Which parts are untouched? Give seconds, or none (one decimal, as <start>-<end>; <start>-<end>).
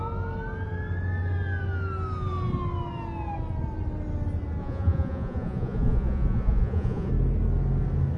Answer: 0.0-4.6; 7.1-8.2